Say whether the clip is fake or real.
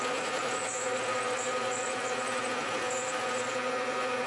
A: real